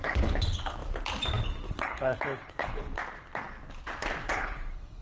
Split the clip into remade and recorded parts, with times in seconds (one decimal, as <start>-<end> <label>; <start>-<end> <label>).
0.0-0.8 remade; 0.8-1.7 recorded; 1.7-3.0 remade; 3.0-4.3 recorded; 4.3-5.0 remade